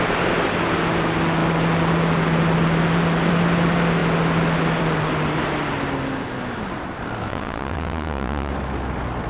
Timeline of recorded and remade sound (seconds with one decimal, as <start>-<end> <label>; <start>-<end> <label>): 0.0-7.3 recorded; 7.3-8.5 remade; 8.5-9.3 recorded